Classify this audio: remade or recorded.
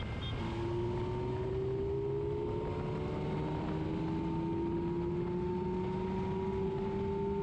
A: recorded